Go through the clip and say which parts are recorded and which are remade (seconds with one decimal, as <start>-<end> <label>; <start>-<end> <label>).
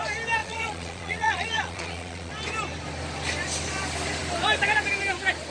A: 0.0-0.4 recorded; 0.4-2.3 remade; 2.3-5.5 recorded